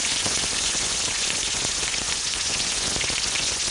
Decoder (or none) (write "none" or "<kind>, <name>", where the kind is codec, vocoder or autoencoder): vocoder, Vocos